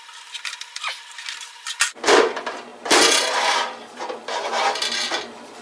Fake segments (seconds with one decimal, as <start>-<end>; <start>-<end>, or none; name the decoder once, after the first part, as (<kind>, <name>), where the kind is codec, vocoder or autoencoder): none